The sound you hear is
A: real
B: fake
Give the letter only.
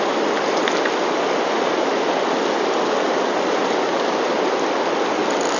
A